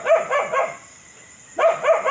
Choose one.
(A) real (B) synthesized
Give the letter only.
A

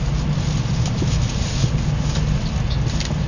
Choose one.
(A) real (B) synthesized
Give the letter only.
A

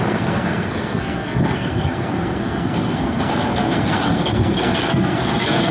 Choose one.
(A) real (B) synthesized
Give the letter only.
B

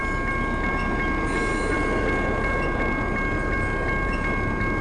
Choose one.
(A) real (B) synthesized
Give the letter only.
A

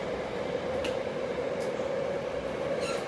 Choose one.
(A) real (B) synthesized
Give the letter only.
A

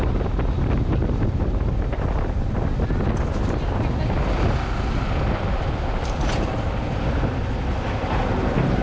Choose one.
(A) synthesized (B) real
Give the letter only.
B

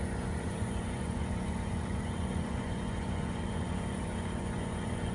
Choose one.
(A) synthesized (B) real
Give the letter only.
A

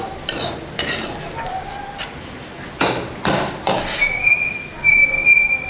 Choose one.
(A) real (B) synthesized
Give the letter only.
A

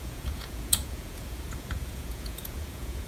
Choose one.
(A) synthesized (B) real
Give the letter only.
A